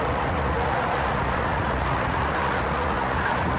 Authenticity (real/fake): fake